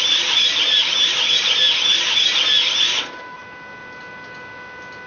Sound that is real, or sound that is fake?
real